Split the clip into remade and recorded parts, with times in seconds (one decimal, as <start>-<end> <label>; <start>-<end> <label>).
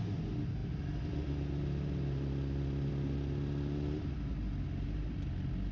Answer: 0.0-5.7 recorded